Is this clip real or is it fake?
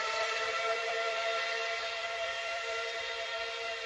fake